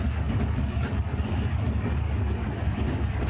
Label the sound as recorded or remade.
remade